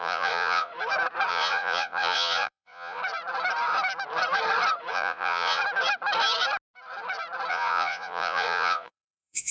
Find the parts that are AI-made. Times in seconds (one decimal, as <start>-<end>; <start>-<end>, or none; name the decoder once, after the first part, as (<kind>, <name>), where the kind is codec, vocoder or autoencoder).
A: 0.0-0.7 (vocoder, Vocos); 1.3-3.0; 4.9-5.6; 7.5-9.5